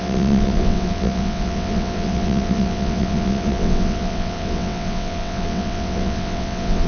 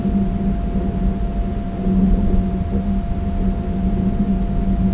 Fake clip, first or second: first